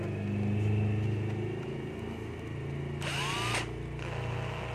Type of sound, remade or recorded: recorded